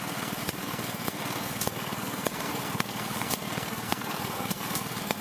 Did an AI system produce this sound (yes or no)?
yes